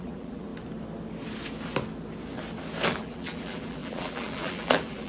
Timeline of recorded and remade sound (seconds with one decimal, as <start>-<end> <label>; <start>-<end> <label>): 0.0-0.5 remade; 0.5-2.9 recorded; 2.9-5.1 remade